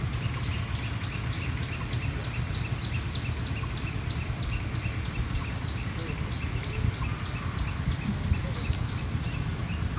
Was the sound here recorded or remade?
recorded